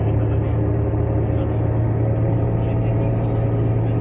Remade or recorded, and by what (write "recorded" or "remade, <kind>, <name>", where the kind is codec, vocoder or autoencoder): recorded